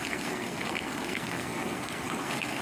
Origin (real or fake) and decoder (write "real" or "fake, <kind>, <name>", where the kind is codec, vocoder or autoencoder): fake, codec, SNAC